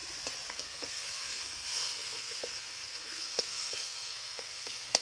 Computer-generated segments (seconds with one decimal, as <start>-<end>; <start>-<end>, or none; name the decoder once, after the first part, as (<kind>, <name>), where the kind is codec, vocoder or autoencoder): 0.5-5.0 (codec, SNAC)